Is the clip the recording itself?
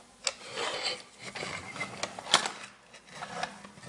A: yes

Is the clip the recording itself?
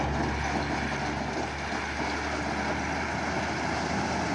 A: yes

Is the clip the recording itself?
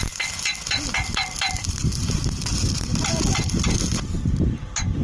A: yes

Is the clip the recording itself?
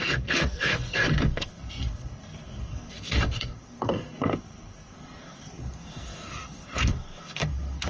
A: no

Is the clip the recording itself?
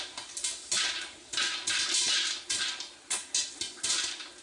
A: yes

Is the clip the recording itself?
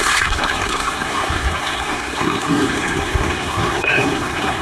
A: no